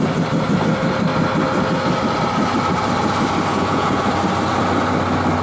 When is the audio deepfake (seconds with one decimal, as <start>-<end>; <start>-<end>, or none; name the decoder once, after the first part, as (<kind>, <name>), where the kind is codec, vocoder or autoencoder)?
3.5-4.1 (vocoder, Vocos)